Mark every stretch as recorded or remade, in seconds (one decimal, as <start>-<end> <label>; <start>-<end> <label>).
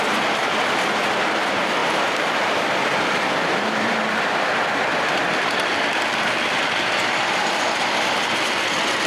0.0-1.8 recorded; 1.8-4.9 remade; 4.9-9.1 recorded